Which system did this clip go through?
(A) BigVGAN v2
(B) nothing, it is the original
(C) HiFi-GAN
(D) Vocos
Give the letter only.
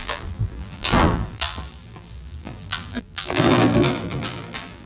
A